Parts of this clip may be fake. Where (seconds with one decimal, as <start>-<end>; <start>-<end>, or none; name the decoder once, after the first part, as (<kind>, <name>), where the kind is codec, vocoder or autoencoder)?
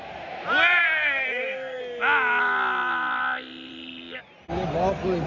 0.8-1.8 (codec, SNAC)